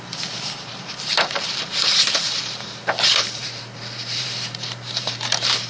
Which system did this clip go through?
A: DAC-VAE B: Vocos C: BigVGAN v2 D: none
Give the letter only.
C